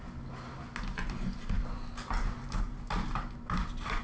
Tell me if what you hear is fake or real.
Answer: real